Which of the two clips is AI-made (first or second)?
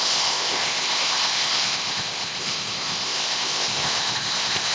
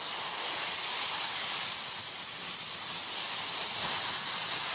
first